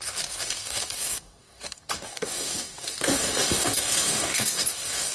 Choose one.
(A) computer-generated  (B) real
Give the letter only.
A